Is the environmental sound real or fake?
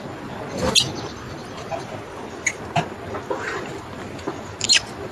real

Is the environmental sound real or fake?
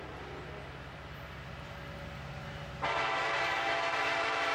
real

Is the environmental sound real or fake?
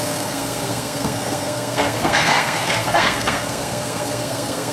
fake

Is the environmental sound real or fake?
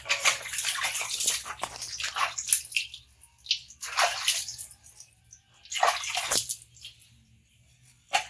real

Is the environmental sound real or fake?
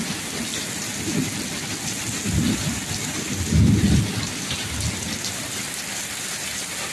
real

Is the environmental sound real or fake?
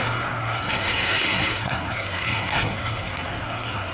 fake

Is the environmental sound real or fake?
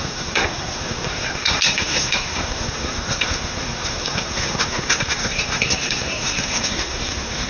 fake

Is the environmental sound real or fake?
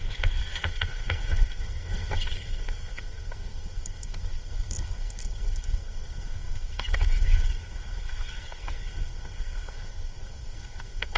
fake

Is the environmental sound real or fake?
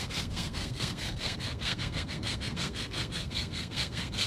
fake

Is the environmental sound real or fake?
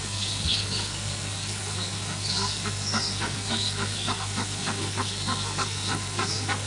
fake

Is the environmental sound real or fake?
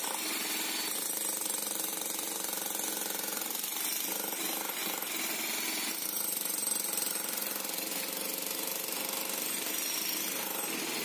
real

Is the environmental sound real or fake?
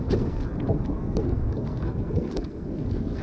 fake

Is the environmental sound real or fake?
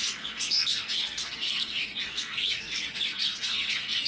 fake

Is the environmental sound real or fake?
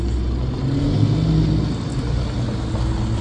real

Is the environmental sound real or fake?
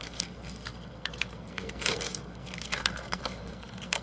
fake